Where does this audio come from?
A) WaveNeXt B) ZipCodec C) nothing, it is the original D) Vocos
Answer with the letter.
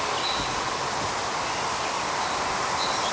C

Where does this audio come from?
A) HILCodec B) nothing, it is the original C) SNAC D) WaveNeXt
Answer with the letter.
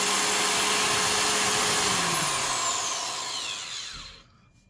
B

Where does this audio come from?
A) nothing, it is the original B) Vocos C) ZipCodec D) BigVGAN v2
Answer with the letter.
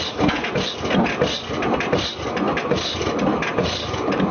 A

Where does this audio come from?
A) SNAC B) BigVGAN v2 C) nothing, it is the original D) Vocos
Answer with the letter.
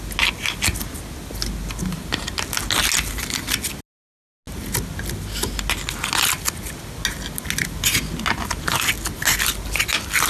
C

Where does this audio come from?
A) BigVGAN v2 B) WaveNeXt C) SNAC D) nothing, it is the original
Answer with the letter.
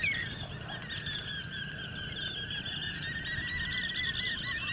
D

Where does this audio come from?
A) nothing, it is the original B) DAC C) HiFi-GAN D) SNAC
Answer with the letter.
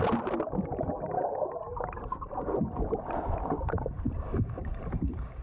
A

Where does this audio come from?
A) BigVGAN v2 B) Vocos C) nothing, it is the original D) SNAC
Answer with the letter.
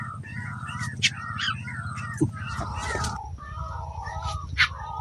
C